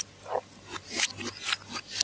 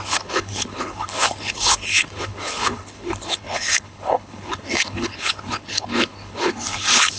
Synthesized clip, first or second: second